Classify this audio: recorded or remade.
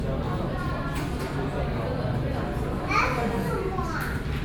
recorded